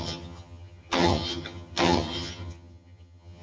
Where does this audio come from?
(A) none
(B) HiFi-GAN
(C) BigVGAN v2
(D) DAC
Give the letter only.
B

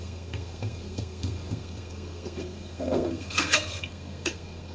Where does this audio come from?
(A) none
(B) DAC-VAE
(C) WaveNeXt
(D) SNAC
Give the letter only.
D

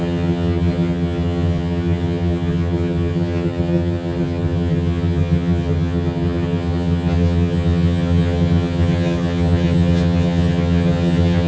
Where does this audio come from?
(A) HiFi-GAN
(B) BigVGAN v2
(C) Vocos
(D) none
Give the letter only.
A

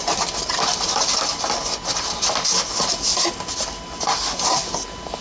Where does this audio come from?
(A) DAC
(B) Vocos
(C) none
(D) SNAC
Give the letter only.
C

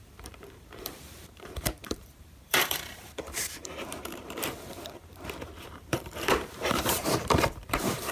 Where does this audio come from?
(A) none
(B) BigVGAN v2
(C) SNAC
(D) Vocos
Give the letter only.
B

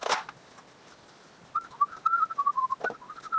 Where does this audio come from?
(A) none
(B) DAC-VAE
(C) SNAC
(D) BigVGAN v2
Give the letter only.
A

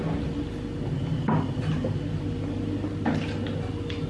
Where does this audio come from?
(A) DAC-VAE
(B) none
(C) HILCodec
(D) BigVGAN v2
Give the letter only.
B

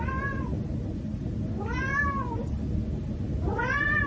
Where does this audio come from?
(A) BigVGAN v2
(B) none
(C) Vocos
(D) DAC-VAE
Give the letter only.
B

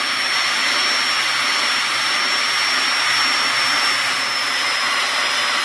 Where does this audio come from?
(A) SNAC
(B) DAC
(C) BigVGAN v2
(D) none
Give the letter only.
D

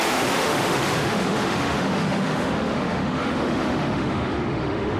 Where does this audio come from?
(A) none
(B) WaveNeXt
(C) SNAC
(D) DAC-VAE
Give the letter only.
D